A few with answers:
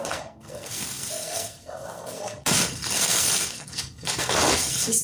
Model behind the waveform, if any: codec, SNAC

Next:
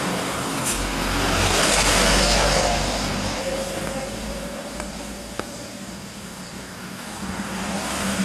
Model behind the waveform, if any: codec, DAC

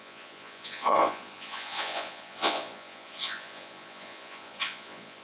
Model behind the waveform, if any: vocoder, Vocos